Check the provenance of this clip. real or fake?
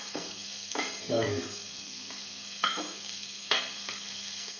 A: fake